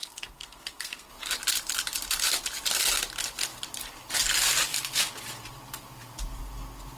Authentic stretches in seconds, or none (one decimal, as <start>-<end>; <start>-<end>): 1.1-7.0